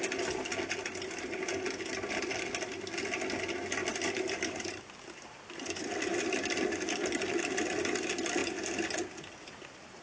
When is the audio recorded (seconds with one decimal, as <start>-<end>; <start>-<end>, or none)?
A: 0.0-3.8; 6.2-10.0